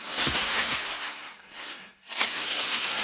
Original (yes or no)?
no